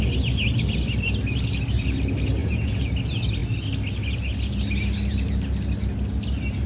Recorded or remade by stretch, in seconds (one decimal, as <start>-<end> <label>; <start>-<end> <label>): 0.0-2.4 recorded; 2.4-2.9 remade; 2.9-6.7 recorded